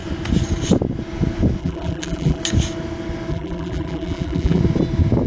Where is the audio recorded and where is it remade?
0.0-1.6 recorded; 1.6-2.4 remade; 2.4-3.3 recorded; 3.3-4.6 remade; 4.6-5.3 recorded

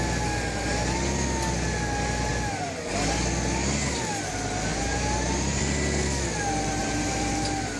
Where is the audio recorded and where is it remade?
0.0-4.7 recorded; 4.7-5.6 remade; 5.6-6.8 recorded; 6.8-7.3 remade; 7.3-7.8 recorded

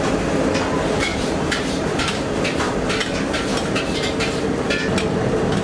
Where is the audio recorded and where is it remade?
0.0-1.1 recorded; 1.1-3.8 remade; 3.8-5.6 recorded

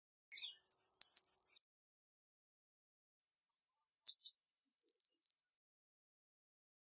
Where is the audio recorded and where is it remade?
0.0-3.2 recorded; 3.2-4.8 remade; 4.8-7.0 recorded

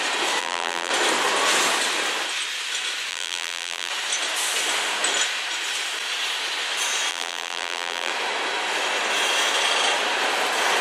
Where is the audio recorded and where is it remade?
0.0-0.4 recorded; 0.4-0.9 remade; 0.9-3.1 recorded; 3.1-3.9 remade; 3.9-7.1 recorded; 7.1-8.1 remade; 8.1-10.8 recorded

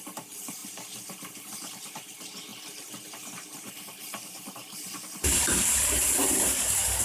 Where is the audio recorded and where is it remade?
0.0-7.0 remade

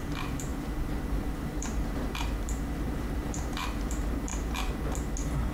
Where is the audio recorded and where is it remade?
0.0-4.3 remade; 4.3-5.5 recorded